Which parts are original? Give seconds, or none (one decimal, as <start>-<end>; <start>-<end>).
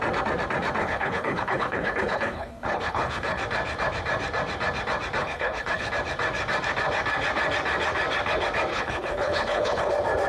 0.0-0.8; 3.4-5.2; 5.9-8.7; 9.9-10.3